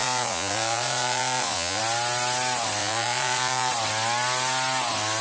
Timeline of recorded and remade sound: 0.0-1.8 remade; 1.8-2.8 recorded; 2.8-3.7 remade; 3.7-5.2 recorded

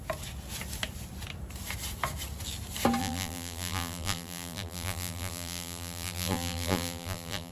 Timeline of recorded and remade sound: 0.0-3.0 recorded; 3.0-7.5 remade

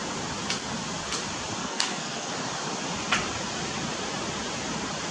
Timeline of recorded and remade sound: 0.0-1.6 recorded; 1.6-2.3 remade; 2.3-5.1 recorded

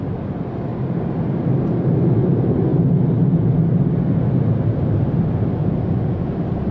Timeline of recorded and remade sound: 0.0-5.6 recorded; 5.6-6.3 remade; 6.3-6.7 recorded

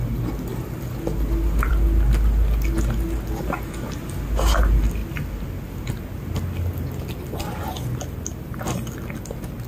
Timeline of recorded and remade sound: 0.0-9.7 recorded

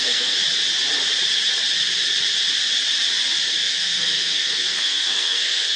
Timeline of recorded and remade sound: 0.0-0.4 remade; 0.4-3.5 recorded; 3.5-5.8 remade